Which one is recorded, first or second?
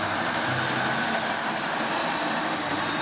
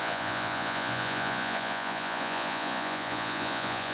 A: first